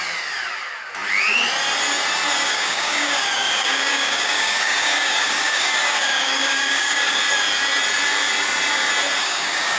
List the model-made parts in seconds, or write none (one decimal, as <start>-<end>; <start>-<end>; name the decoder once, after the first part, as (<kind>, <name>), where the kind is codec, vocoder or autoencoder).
2.5-7.2 (codec, DAC); 9.2-9.8